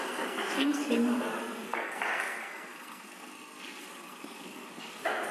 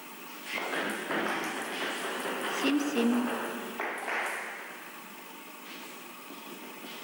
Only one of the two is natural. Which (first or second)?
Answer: second